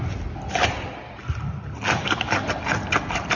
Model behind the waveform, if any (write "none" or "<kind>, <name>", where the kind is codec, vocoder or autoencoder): none